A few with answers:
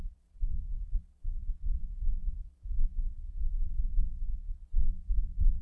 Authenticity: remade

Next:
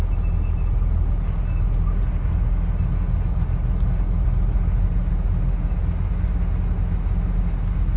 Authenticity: recorded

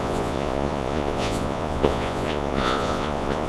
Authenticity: remade